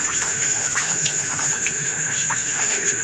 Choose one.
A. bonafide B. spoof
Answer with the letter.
B